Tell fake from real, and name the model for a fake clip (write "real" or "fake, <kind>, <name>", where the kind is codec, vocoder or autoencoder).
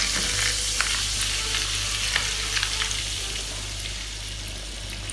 real